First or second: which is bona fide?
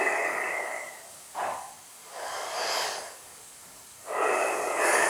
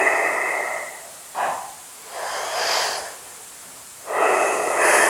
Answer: second